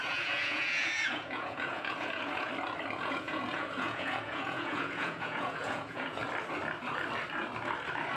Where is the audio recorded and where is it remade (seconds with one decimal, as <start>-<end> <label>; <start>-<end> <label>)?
0.0-2.5 remade; 2.5-3.0 recorded; 3.0-6.2 remade; 6.2-8.2 recorded